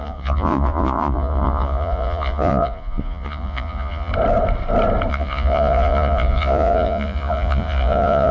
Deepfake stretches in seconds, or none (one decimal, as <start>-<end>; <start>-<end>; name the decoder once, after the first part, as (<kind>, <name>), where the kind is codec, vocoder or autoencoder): 0.0-4.1 (vocoder, Vocos); 5.1-8.3

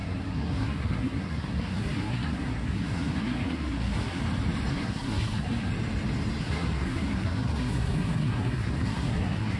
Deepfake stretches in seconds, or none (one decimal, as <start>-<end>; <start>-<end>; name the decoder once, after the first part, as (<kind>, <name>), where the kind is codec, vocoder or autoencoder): 0.0-4.2 (codec, SNAC); 4.7-5.7; 6.4-9.6